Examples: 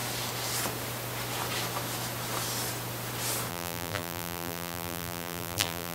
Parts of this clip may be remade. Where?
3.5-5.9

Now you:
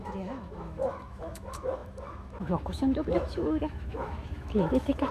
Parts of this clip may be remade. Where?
0.0-5.1

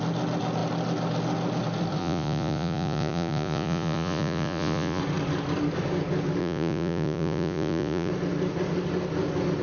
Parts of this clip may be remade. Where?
2.0-5.0; 6.4-8.1

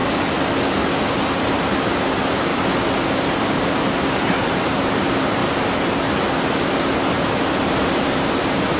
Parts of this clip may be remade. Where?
1.6-2.5; 3.1-5.4; 7.1-8.8